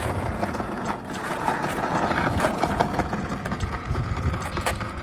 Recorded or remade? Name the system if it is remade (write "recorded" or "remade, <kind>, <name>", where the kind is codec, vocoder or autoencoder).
remade, vocoder, Vocos